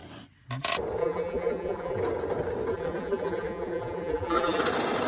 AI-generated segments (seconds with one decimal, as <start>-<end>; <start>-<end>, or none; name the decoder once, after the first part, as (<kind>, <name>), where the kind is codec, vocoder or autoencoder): 1.0-2.0 (vocoder, BigVGAN v2); 2.7-4.6